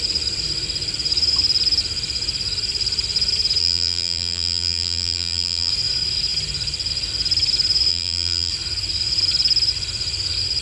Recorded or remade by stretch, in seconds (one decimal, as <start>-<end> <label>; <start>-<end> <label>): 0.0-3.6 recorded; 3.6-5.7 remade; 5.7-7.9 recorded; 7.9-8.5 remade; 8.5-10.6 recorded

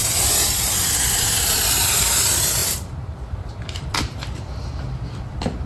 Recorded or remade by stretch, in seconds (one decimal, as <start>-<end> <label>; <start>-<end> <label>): 0.0-5.7 remade

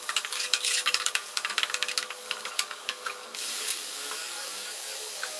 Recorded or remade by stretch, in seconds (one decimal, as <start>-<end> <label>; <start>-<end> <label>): 0.0-5.4 remade

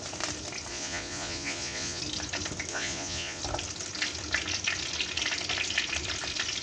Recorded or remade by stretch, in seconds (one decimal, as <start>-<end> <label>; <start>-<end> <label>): 0.0-0.7 recorded; 0.7-2.0 remade; 2.0-2.7 recorded; 2.7-3.4 remade; 3.4-6.6 recorded

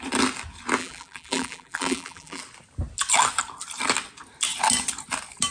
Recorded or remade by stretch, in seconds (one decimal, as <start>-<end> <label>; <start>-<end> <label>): 0.0-0.8 recorded; 0.8-2.4 remade; 2.4-5.5 recorded

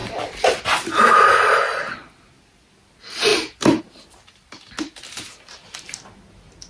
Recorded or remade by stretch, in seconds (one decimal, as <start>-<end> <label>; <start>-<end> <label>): 0.0-6.7 recorded

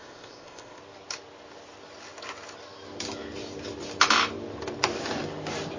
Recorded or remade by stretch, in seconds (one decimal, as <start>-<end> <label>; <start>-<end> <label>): 0.0-0.8 remade; 0.8-5.8 recorded

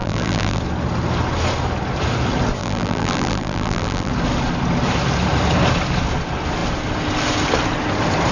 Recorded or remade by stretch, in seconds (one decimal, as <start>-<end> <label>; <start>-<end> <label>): 0.0-0.6 remade; 0.6-2.6 recorded; 2.6-4.1 remade; 4.1-8.3 recorded